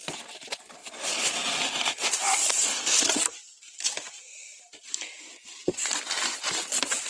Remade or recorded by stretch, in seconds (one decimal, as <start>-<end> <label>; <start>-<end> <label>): 0.0-7.1 recorded